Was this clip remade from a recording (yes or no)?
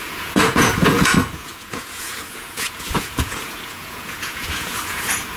yes